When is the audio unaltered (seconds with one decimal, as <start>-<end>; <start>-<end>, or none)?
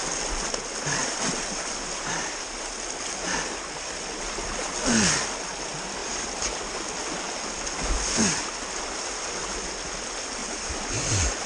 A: 0.0-10.4; 10.9-11.5